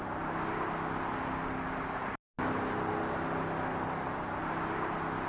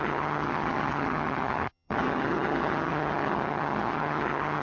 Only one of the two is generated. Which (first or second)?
second